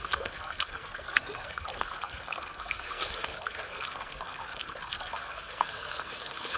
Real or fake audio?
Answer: fake